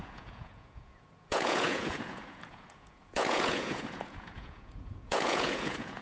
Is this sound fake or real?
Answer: fake